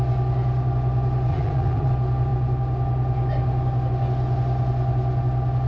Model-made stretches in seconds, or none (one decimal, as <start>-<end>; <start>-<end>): 1.3-1.9